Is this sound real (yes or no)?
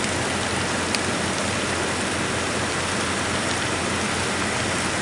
yes